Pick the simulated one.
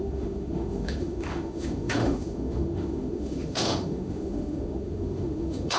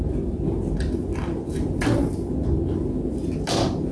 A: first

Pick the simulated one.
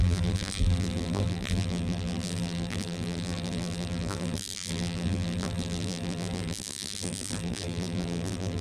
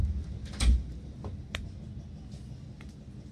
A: first